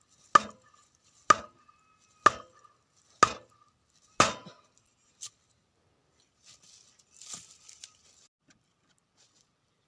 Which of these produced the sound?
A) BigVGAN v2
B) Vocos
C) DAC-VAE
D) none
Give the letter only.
D